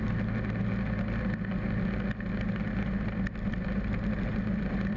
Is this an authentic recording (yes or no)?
yes